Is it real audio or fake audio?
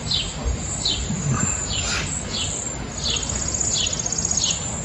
real